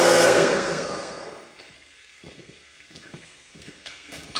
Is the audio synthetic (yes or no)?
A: yes